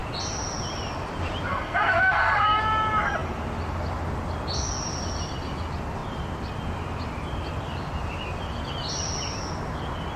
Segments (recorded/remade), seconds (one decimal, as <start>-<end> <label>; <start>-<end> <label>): 0.0-1.5 recorded; 1.5-2.6 remade; 2.6-10.2 recorded